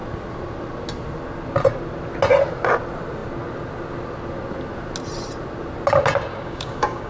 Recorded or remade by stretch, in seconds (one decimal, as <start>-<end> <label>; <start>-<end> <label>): 0.0-6.3 recorded; 6.3-7.1 remade